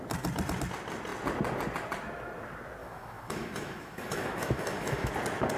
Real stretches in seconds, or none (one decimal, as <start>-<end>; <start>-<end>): 0.0-2.8; 5.1-5.6